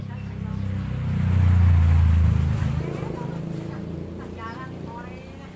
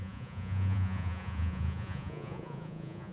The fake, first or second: second